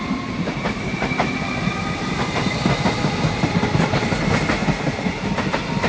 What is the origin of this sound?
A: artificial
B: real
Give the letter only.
B